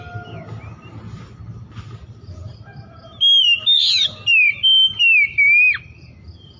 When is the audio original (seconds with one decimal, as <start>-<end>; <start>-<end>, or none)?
0.0-6.6

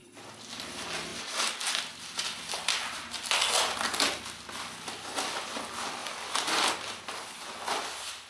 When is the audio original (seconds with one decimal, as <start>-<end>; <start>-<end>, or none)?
0.0-8.3

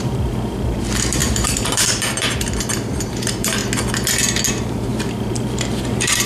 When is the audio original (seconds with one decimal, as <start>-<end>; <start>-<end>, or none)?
3.6-4.5

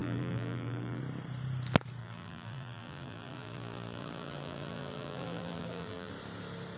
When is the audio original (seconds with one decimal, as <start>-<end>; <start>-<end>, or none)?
1.0-2.0; 6.1-6.8